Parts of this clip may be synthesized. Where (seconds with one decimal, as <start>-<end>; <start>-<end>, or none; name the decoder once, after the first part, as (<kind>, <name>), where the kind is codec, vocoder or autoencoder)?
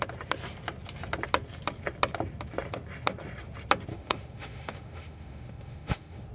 3.9-6.3 (autoencoder, DAC-VAE)